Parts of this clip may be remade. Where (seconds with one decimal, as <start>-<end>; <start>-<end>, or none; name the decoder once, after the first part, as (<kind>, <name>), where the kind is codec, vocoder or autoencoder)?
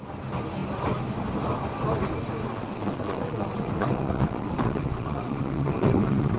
2.5-6.4 (vocoder, WaveNeXt)